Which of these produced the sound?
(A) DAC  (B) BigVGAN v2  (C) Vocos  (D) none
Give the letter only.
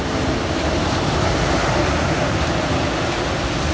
D